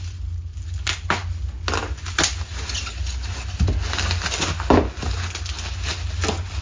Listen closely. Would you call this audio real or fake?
real